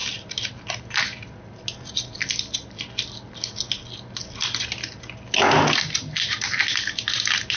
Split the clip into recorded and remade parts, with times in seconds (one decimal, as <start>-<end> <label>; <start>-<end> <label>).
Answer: 0.0-7.6 recorded